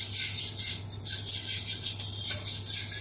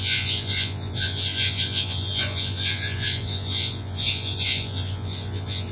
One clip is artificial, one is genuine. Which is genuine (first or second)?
first